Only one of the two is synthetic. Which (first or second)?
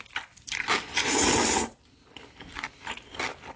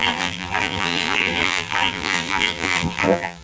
second